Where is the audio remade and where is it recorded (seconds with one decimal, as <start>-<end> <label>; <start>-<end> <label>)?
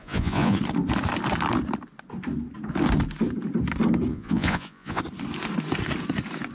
0.0-0.6 remade; 0.6-4.1 recorded; 4.1-5.0 remade; 5.0-6.5 recorded